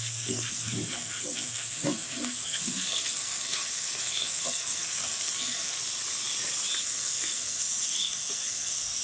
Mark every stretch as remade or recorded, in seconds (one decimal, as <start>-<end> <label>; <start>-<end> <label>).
0.0-5.8 remade; 5.8-6.8 recorded; 6.8-9.0 remade